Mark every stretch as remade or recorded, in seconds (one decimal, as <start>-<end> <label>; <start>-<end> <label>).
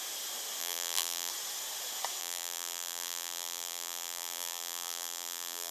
0.0-0.6 recorded; 0.6-1.3 remade; 1.3-2.2 recorded; 2.2-5.7 remade